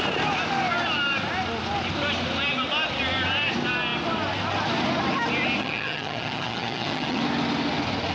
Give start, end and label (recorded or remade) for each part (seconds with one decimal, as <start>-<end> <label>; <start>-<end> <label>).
0.0-5.6 recorded; 5.6-7.2 remade; 7.2-8.1 recorded